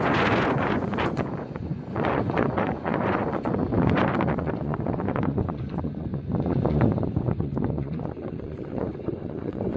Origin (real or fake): fake